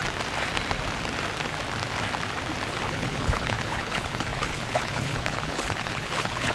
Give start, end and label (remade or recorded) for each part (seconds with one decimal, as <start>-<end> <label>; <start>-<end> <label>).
0.0-2.9 recorded; 2.9-6.5 remade